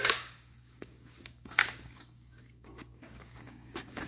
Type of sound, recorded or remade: remade